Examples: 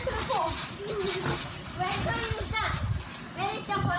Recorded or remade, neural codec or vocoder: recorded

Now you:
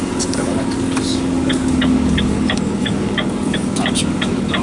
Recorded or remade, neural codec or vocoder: remade, codec, DAC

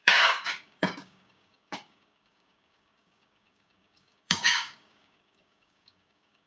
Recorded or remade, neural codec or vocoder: remade, codec, DAC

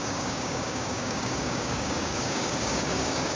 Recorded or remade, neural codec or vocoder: remade, codec, DAC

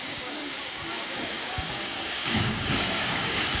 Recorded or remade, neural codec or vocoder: remade, codec, DAC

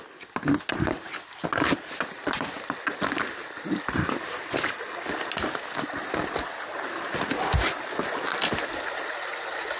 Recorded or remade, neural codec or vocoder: recorded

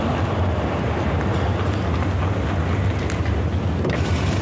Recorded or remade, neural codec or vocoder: recorded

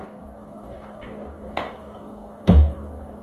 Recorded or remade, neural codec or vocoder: remade, codec, DAC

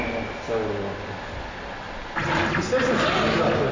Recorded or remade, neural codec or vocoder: recorded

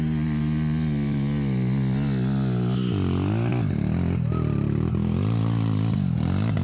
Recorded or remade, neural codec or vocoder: recorded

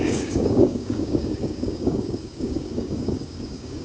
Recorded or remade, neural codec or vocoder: remade, codec, DAC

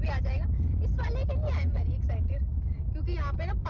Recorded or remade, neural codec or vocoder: recorded